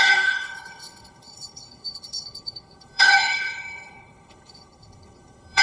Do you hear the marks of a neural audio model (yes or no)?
yes